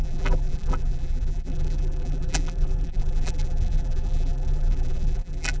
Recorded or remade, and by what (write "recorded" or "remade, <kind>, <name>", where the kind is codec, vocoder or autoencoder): remade, vocoder, BigVGAN v2